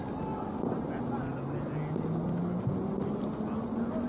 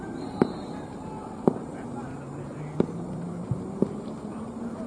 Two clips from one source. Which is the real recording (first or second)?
first